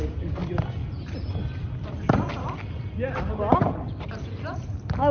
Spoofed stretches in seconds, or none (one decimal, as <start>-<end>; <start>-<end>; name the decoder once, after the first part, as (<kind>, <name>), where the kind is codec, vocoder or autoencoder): none

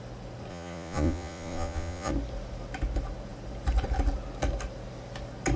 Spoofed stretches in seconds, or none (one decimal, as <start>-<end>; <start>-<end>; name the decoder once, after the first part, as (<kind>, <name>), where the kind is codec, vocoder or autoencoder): 0.5-2.1 (vocoder, Vocos)

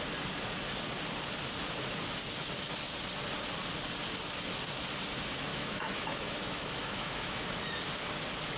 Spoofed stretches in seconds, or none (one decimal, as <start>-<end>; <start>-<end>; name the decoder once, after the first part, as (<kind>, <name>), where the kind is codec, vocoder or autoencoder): 5.5-7.4 (autoencoder, DAC-VAE)

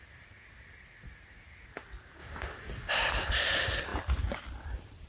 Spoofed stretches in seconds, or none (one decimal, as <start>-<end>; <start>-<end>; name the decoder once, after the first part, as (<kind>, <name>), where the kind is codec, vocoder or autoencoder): 2.2-2.9 (vocoder, BigVGAN v2)

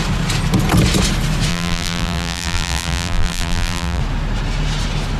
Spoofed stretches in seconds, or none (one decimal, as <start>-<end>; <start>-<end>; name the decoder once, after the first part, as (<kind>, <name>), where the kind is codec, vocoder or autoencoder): 1.5-4.0 (vocoder, BigVGAN v2)

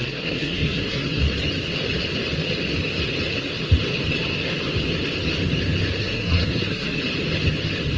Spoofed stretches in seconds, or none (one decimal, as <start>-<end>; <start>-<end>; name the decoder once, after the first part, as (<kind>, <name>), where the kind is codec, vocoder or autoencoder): 0.0-1.2 (codec, SNAC); 6.0-7.0

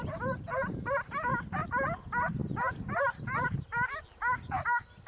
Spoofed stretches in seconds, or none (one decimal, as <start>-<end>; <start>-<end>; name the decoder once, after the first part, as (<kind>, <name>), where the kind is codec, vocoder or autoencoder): none